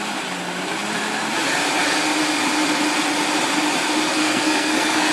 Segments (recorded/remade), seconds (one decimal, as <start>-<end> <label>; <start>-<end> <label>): 0.0-4.2 recorded; 4.2-5.1 remade